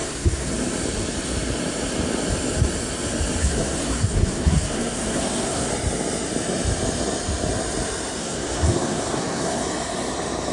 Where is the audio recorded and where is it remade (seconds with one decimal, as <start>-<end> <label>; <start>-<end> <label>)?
0.0-0.5 remade; 0.5-3.4 recorded; 3.4-5.7 remade; 5.7-8.2 recorded; 8.2-9.6 remade; 9.6-10.5 recorded